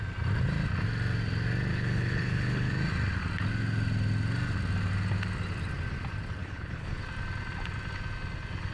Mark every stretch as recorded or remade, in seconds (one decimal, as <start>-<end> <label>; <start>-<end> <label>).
0.0-1.7 recorded; 1.7-2.7 remade; 2.7-6.4 recorded; 6.4-7.0 remade; 7.0-8.7 recorded